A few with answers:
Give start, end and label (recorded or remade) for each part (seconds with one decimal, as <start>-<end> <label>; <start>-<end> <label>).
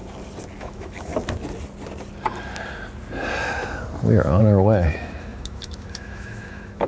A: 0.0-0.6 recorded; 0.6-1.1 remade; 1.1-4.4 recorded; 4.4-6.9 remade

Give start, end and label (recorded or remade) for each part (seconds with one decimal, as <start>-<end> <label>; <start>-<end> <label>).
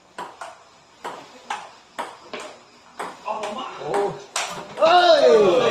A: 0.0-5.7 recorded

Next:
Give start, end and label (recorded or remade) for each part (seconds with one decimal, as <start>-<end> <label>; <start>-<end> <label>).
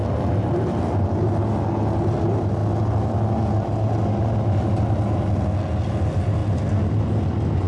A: 0.0-7.7 recorded